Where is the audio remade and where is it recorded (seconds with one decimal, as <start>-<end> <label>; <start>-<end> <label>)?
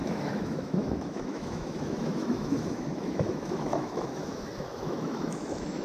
0.0-5.8 remade